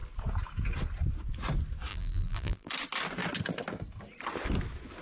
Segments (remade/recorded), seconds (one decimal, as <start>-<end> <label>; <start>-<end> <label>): 0.0-1.9 recorded; 1.9-2.7 remade; 2.7-5.0 recorded